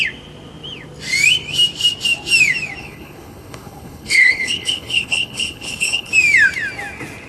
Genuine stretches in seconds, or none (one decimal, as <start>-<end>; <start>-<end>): 0.0-2.8; 6.1-7.3